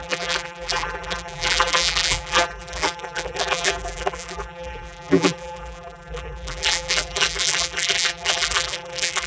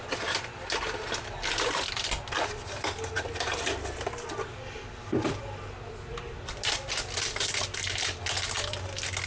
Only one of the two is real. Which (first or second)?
second